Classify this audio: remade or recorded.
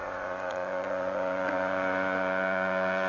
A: remade